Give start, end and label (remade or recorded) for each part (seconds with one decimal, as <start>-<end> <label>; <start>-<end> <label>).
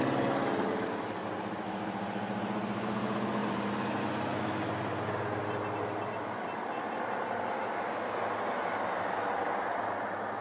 0.0-3.4 recorded; 3.4-4.0 remade; 4.0-10.4 recorded